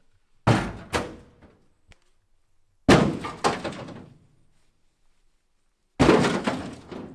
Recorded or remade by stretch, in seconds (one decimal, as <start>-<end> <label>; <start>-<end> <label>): 0.0-7.1 recorded